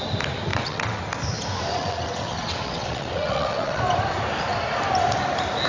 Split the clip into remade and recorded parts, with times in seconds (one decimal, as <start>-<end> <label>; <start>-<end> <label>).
0.0-0.5 recorded; 0.5-1.0 remade; 1.0-1.7 recorded; 1.7-3.8 remade; 3.8-5.7 recorded